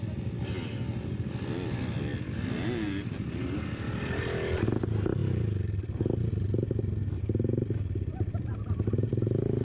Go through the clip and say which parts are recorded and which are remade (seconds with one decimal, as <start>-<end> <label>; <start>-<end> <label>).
0.0-9.6 recorded